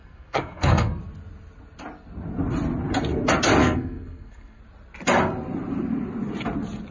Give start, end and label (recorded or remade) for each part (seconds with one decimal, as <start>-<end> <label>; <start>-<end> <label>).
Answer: 0.0-1.0 remade; 1.0-3.6 recorded; 3.6-4.6 remade; 4.6-6.9 recorded